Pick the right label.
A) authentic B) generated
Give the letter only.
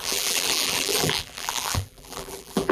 B